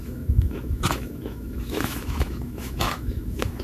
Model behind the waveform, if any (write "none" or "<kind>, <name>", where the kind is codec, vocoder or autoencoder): autoencoder, DAC-VAE